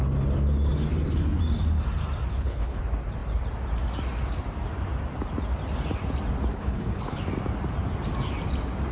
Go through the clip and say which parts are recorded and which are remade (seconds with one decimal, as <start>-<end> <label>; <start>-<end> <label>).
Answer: 0.0-2.3 recorded; 2.3-2.8 remade; 2.8-6.5 recorded; 6.5-7.2 remade; 7.2-8.9 recorded